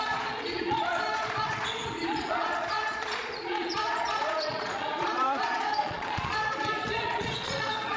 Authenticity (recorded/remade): remade